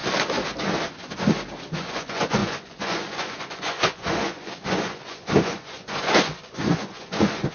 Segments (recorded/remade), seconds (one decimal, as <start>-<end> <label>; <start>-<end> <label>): 0.0-1.7 recorded; 1.7-7.5 remade